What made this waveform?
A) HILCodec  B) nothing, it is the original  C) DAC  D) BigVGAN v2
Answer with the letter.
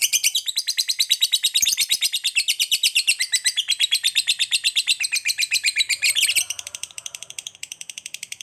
D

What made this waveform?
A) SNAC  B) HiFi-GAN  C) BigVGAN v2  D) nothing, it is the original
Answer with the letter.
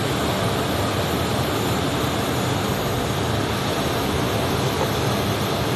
D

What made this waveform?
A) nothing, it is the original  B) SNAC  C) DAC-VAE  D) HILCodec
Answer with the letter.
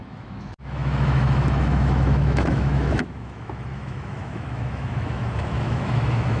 C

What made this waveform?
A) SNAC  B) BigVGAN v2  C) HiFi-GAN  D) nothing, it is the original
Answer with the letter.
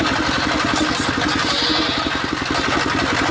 D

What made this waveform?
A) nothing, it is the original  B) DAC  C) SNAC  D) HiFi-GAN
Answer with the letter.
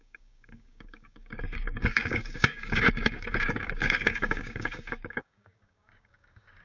B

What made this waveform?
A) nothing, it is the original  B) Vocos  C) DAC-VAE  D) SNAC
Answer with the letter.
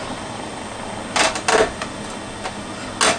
A